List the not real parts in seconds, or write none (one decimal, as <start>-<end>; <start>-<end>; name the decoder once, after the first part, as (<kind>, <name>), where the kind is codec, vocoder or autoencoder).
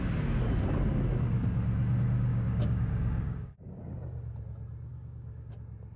2.3-3.8 (codec, DAC); 4.9-5.5